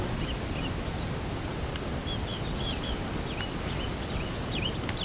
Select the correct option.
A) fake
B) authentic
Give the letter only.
B